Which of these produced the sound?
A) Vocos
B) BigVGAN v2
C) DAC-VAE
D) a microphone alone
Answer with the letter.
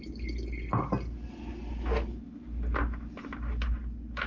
D